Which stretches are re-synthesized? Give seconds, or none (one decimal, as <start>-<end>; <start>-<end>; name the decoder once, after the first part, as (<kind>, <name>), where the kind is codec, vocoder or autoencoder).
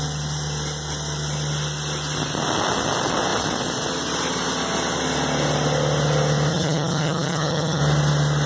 6.5-7.8 (vocoder, HiFi-GAN)